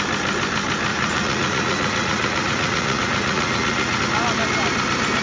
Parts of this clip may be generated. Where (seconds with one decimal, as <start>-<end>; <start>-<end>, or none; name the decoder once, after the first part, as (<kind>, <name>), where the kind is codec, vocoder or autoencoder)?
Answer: 0.9-4.0 (vocoder, Vocos)